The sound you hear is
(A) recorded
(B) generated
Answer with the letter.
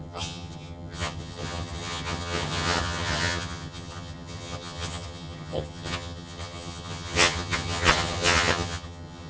B